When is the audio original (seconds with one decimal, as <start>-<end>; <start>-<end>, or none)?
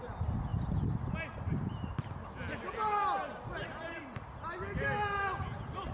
0.0-5.9